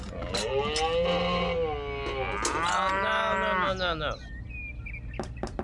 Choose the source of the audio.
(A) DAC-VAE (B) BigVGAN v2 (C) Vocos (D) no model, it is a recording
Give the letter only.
D